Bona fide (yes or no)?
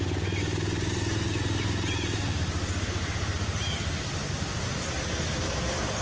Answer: yes